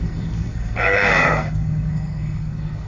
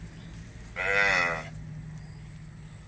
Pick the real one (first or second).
second